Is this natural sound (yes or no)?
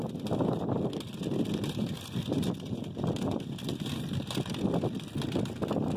yes